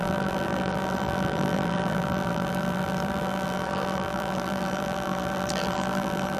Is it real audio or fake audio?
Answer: fake